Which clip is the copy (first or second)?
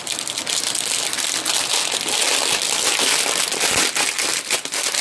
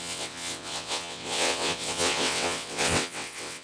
second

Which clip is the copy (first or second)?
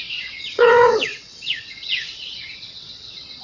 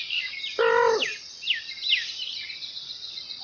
first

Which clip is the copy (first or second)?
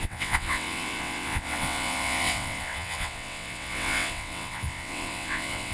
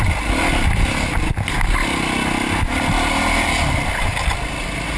first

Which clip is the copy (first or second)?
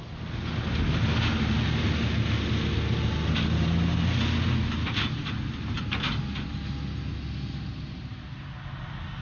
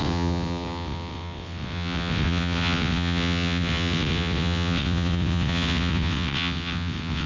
second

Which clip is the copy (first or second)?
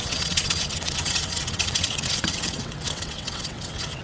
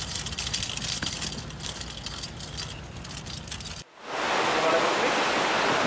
first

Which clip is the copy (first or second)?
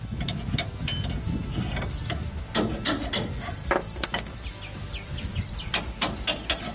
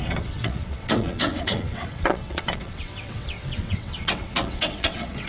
second